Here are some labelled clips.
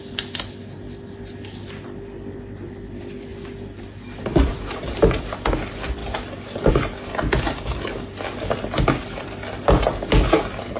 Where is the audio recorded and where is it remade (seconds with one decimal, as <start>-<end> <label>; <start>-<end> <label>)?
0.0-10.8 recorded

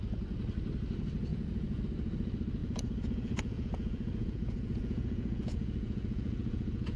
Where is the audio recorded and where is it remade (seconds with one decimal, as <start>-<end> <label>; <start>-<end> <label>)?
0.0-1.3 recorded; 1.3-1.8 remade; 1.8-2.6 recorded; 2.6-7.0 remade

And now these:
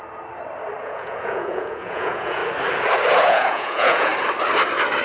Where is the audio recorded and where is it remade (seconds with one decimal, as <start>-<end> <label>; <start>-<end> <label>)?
0.0-0.8 recorded; 0.8-2.4 remade; 2.4-3.1 recorded; 3.1-4.1 remade; 4.1-5.0 recorded

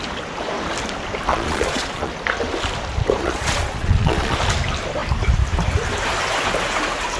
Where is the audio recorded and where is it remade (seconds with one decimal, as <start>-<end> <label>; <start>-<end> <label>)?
0.0-1.3 recorded; 1.3-2.1 remade; 2.1-3.2 recorded; 3.2-4.4 remade; 4.4-7.2 recorded

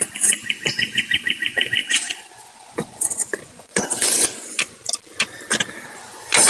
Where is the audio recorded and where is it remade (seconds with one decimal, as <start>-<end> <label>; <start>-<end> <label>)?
0.0-4.8 remade; 4.8-5.9 recorded; 5.9-6.5 remade

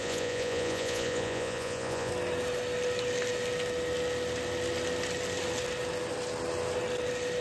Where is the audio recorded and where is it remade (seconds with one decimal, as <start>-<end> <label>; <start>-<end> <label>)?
0.0-2.1 remade; 2.1-7.4 recorded

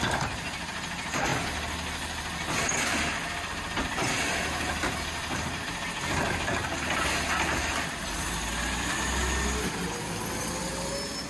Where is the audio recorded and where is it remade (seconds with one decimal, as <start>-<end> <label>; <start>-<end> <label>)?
0.0-11.3 recorded

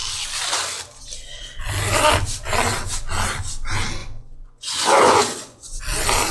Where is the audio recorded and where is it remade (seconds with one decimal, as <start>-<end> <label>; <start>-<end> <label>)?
0.0-4.0 recorded; 4.0-5.8 remade; 5.8-6.3 recorded